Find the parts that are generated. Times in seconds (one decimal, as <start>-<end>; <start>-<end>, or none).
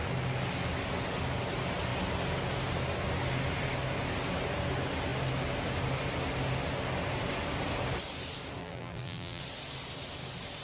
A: 8.6-9.4